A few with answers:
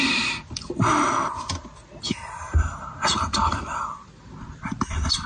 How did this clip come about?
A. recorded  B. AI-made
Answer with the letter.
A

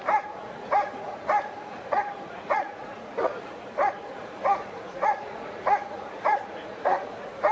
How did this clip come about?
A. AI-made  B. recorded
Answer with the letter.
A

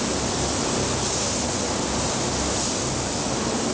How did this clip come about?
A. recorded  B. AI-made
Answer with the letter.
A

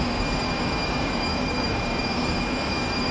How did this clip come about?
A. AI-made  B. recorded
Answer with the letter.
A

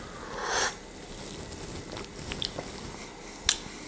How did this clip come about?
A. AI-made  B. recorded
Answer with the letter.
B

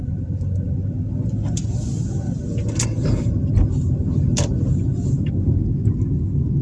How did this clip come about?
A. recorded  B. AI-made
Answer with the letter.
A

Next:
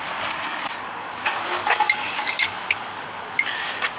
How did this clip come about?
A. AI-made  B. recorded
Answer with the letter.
A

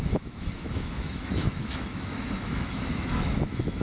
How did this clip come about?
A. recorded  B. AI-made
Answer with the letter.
B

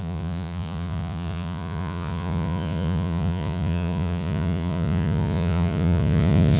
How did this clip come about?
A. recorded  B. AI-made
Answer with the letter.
B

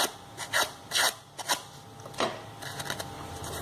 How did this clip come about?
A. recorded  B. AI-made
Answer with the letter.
A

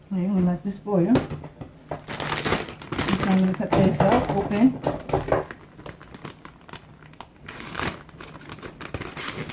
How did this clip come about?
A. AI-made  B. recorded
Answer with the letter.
B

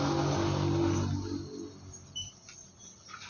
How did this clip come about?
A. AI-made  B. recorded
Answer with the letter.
B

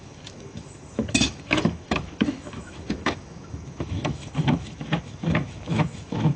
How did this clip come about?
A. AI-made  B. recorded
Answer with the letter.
A